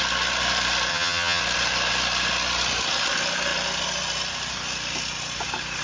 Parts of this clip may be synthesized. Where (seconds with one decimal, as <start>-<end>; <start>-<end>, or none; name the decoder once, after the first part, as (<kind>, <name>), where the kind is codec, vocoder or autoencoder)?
0.9-1.4 (vocoder, HiFi-GAN)